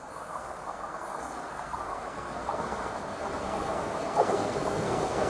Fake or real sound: fake